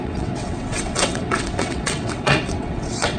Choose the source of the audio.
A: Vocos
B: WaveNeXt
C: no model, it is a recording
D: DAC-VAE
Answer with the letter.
B